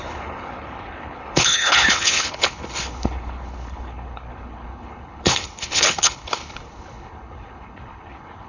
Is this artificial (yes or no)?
yes